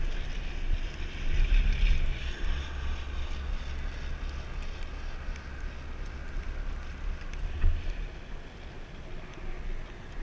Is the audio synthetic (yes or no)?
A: no